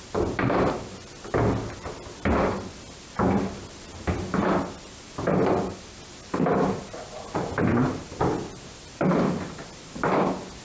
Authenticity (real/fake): real